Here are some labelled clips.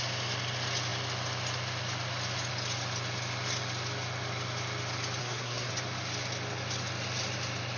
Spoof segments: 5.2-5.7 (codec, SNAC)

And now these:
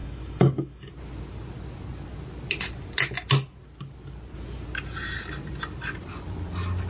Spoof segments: 0.0-0.9 (autoencoder, DAC-VAE)

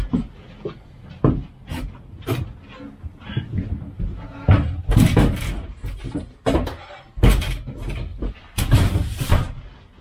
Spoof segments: 8.1-9.6 (vocoder, BigVGAN v2)

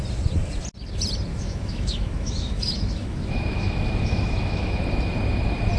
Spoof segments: 1.3-4.8 (autoencoder, DAC-VAE)

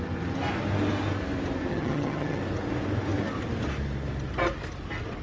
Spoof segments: 1.7-2.4 (vocoder, HiFi-GAN)